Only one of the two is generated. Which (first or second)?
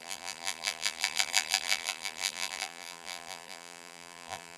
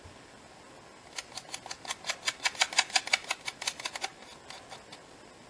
first